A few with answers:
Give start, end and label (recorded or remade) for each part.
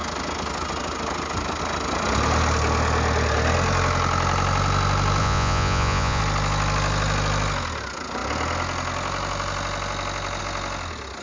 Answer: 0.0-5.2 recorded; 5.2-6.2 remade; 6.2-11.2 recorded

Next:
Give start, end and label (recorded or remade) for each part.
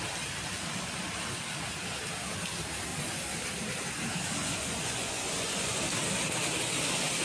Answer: 0.0-4.4 recorded; 4.4-5.8 remade; 5.8-7.2 recorded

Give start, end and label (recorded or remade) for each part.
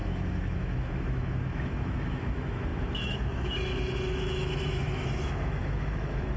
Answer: 0.0-6.4 remade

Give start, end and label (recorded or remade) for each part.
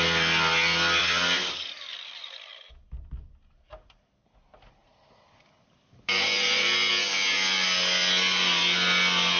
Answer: 0.0-1.0 recorded; 1.0-2.2 remade; 2.2-4.8 recorded; 4.8-6.9 remade; 6.9-9.4 recorded